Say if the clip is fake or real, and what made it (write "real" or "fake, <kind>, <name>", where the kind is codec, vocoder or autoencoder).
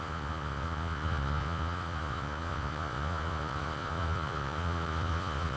fake, vocoder, Vocos